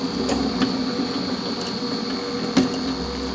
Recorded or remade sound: recorded